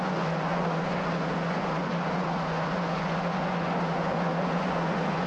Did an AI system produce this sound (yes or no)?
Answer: yes